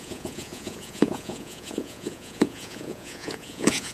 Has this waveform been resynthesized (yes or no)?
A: yes